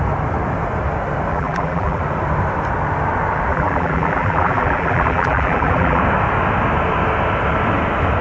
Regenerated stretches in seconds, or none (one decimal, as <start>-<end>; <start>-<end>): 1.3-2.0; 3.5-6.0